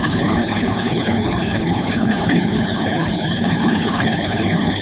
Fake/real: fake